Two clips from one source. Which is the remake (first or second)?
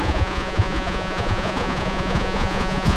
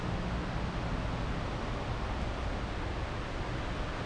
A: first